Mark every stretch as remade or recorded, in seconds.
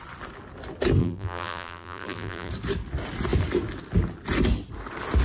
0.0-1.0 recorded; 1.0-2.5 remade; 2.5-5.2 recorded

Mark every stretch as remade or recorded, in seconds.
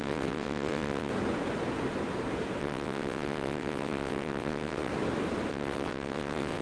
0.0-1.1 remade; 1.1-2.6 recorded; 2.6-4.9 remade; 4.9-5.5 recorded; 5.5-6.6 remade